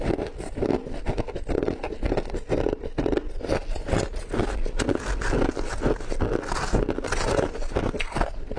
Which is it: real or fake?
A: real